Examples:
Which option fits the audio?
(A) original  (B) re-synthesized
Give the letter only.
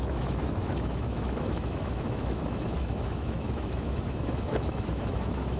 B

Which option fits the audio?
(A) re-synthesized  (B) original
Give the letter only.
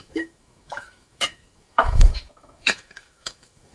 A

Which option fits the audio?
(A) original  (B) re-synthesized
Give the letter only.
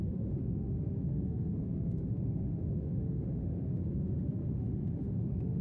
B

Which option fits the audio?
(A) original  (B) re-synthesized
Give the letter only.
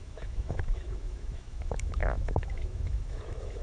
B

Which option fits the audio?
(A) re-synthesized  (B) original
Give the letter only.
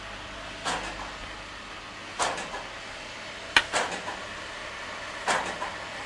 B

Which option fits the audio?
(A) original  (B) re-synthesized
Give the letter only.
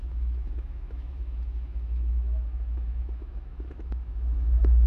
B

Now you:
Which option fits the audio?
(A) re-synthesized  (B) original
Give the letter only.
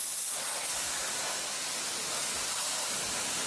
B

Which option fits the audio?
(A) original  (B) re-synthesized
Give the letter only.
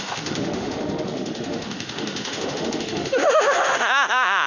B